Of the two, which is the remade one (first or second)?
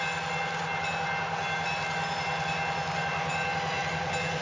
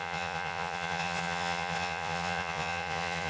second